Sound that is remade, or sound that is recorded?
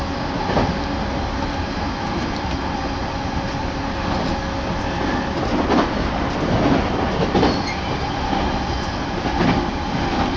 recorded